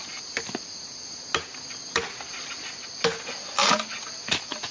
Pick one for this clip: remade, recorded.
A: recorded